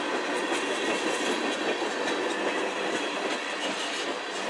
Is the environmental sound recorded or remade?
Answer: recorded